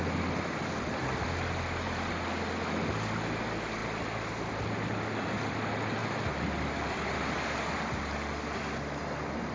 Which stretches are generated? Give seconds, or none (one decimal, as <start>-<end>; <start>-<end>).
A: 6.0-7.6